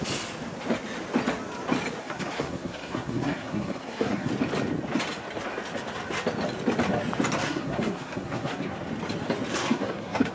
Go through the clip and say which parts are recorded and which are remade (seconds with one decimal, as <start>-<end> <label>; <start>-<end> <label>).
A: 0.0-2.0 recorded; 2.0-4.3 remade; 4.3-7.4 recorded; 7.4-8.7 remade; 8.7-9.6 recorded; 9.6-10.3 remade